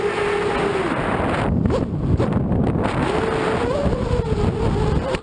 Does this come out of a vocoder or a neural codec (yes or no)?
no